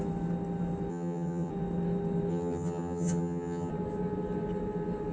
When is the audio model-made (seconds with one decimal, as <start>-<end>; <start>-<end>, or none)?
0.9-1.5; 2.3-3.7